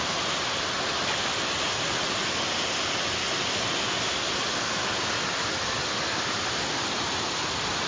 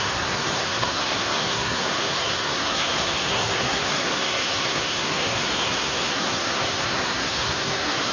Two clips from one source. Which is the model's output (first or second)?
second